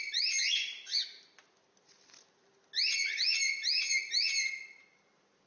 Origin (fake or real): real